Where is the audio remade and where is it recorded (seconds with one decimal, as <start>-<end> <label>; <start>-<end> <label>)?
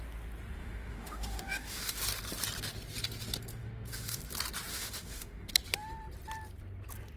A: 0.0-0.6 recorded; 0.6-2.0 remade; 2.0-3.5 recorded; 3.5-4.2 remade; 4.2-4.7 recorded; 4.7-5.5 remade; 5.5-7.2 recorded